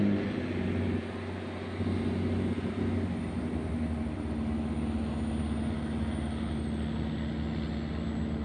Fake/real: real